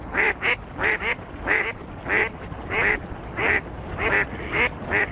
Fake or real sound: real